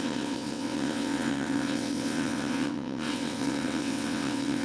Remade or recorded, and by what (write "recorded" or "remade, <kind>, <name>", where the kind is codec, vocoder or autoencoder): remade, vocoder, WaveNeXt